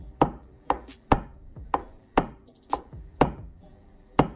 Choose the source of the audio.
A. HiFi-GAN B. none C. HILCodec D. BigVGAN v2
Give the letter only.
D